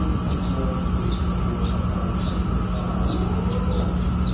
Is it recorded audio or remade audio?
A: recorded